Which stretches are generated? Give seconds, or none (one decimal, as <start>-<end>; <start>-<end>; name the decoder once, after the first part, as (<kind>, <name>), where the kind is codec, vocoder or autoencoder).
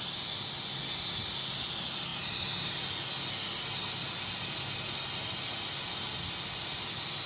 none